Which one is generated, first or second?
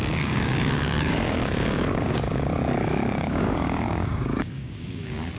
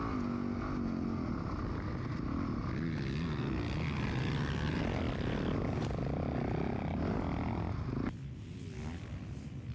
first